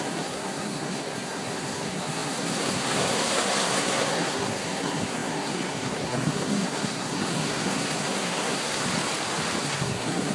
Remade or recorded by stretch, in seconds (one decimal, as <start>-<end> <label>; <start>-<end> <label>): 0.0-8.9 remade; 8.9-9.6 recorded; 9.6-10.3 remade